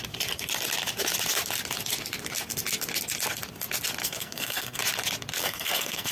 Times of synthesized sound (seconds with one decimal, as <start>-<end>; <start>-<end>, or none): 4.0-4.8; 5.4-6.1